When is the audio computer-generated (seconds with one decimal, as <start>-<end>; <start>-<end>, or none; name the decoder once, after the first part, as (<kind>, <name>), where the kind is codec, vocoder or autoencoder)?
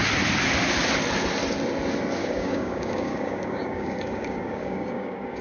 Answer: 2.2-5.4 (codec, DAC)